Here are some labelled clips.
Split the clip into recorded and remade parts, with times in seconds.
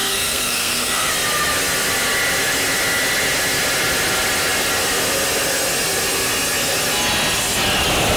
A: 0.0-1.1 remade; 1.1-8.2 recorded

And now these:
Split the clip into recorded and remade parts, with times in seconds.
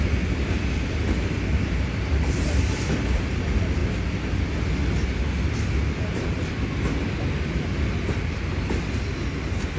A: 0.0-9.8 recorded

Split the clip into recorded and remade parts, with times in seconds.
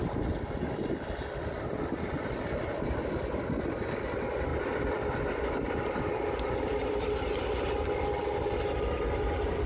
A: 0.0-9.7 recorded